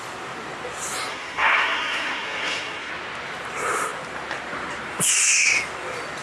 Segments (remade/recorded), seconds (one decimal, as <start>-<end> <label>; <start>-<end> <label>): 0.0-1.1 recorded; 1.1-2.9 remade; 2.9-6.2 recorded